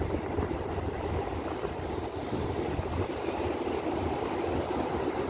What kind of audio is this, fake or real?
real